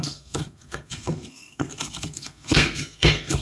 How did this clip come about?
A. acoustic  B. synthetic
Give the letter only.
B